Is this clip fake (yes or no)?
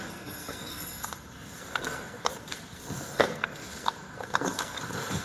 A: yes